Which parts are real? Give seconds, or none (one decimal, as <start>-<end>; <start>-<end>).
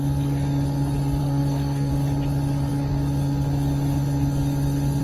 0.0-1.2; 1.9-5.0